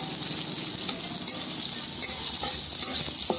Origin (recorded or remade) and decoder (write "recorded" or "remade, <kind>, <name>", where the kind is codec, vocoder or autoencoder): recorded